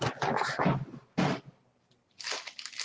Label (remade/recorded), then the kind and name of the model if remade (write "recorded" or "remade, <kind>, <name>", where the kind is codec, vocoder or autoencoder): recorded